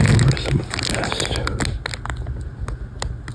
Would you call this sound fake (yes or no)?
no